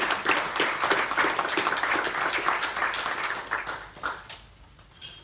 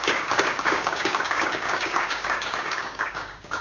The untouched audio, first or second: first